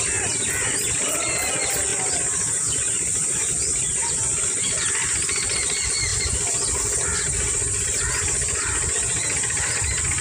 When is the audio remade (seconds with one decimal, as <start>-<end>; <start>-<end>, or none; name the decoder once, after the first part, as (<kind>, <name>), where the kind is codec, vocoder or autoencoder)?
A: none